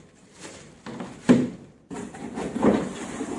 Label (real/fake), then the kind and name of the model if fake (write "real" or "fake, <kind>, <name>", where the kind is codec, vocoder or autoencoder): real